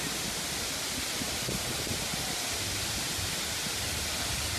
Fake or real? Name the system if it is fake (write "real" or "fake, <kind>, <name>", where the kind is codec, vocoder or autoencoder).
real